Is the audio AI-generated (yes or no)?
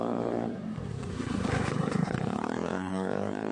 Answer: yes